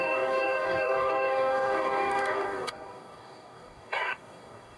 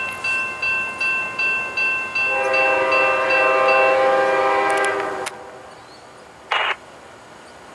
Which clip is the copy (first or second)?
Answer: first